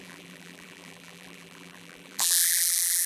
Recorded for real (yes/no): no